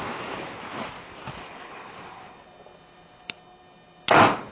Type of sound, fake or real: real